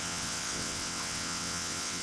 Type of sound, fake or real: fake